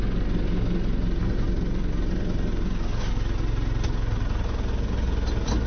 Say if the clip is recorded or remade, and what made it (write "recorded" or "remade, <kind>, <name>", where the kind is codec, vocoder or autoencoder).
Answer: recorded